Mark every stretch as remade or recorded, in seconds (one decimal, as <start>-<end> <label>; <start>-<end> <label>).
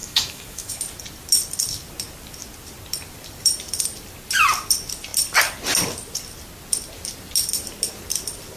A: 0.0-0.8 remade; 0.8-8.6 recorded